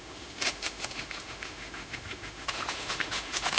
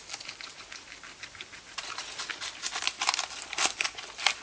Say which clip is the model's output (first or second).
first